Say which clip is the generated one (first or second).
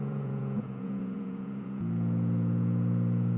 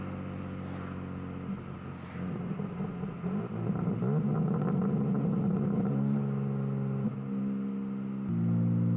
first